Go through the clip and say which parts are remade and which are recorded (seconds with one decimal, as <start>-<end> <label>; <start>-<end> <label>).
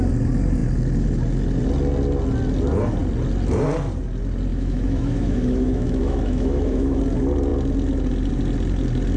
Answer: 0.0-4.5 recorded; 4.5-7.0 remade; 7.0-9.2 recorded